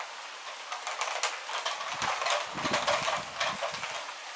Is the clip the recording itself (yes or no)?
yes